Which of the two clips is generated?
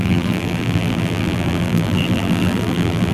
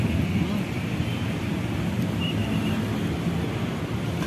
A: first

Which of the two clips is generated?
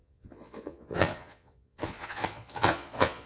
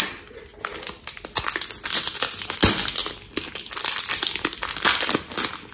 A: first